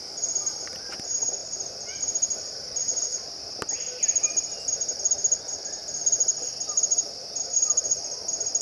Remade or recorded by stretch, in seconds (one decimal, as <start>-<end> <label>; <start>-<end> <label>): 0.0-8.6 recorded